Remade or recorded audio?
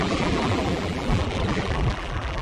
remade